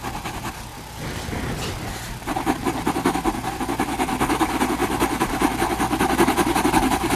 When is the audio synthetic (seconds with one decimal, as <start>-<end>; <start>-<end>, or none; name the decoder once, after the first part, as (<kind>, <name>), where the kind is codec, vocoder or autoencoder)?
4.8-5.5 (vocoder, BigVGAN v2)